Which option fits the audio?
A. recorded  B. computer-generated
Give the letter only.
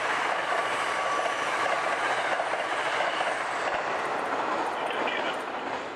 A